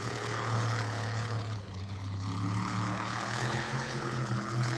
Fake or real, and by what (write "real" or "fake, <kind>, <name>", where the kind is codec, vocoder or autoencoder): fake, codec, HILCodec